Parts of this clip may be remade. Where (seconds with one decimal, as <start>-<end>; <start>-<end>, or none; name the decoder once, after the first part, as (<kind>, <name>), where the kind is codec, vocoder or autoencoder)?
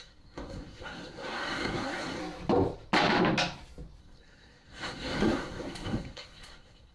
0.0-2.2 (codec, SNAC); 4.0-6.9